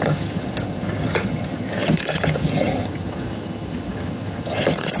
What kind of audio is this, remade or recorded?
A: remade